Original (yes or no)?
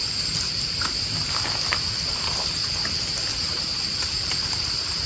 yes